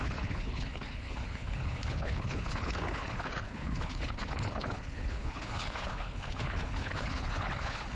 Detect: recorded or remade remade